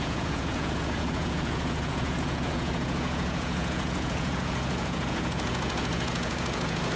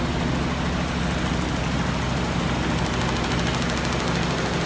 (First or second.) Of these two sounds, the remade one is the first